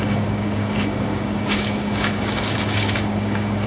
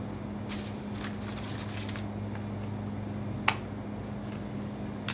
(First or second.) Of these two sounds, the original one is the second